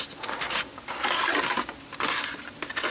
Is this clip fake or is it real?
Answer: real